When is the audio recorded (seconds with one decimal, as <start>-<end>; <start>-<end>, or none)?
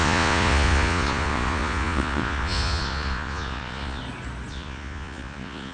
4.0-4.5